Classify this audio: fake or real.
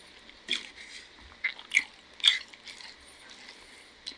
real